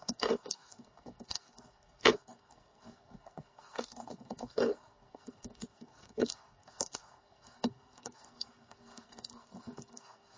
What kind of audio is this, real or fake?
fake